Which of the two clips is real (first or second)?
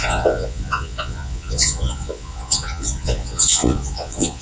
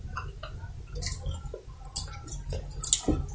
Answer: second